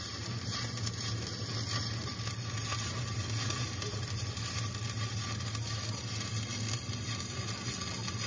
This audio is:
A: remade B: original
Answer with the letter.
B